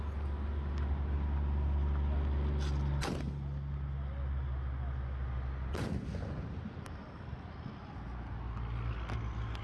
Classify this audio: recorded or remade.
recorded